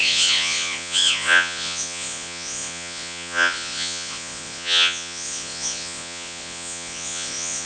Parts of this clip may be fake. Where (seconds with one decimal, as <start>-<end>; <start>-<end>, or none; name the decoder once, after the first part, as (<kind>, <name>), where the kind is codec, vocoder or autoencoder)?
0.0-7.7 (vocoder, Vocos)